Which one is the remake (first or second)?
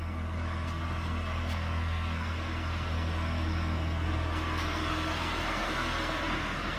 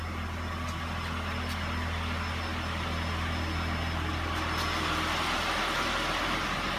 first